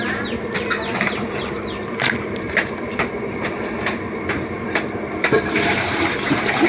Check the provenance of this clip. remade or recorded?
remade